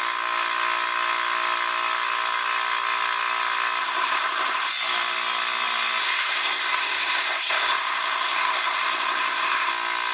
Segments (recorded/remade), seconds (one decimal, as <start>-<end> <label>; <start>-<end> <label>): 0.0-3.8 recorded; 3.8-4.7 remade; 4.7-6.0 recorded; 6.0-9.7 remade; 9.7-10.1 recorded